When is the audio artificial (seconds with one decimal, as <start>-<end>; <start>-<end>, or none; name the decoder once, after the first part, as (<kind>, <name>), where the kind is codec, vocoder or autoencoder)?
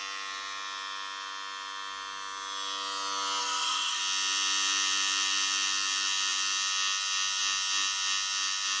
3.4-4.0 (codec, SNAC)